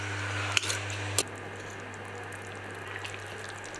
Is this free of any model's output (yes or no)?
yes